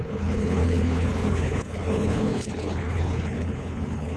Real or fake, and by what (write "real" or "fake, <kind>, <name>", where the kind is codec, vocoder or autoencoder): fake, codec, HILCodec